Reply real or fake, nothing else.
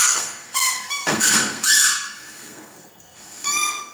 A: fake